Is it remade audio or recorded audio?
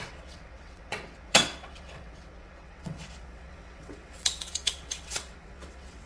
remade